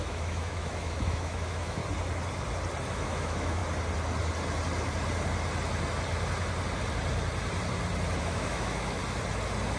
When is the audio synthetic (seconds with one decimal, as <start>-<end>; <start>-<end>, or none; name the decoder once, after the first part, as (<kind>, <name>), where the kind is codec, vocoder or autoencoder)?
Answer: 0.0-1.8 (autoencoder, DAC-VAE); 2.9-3.6; 8.2-9.0

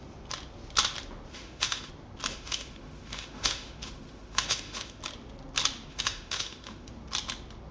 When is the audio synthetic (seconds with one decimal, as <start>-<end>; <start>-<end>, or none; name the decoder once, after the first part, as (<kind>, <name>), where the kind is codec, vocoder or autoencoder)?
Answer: 1.3-1.9 (autoencoder, DAC-VAE); 2.3-5.0; 5.9-6.9

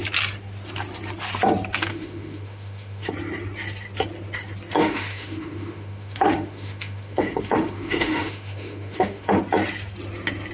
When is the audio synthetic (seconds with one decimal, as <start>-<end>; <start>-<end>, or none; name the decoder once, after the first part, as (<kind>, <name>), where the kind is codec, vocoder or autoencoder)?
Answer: 1.9-3.1 (autoencoder, DAC-VAE); 4.8-9.4

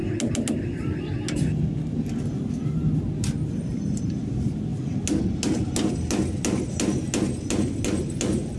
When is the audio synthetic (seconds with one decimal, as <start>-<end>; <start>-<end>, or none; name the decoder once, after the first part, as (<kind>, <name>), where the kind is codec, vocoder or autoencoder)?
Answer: none

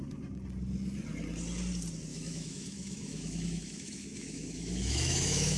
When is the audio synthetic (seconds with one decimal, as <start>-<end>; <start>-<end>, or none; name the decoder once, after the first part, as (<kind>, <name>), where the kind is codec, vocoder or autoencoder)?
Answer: 2.1-5.6 (autoencoder, DAC-VAE)

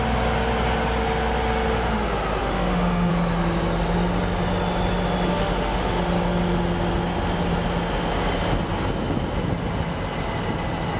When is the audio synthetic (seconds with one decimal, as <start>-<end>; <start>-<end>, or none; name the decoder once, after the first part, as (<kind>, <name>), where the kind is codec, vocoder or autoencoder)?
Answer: 2.4-3.1 (autoencoder, DAC-VAE); 5.3-6.0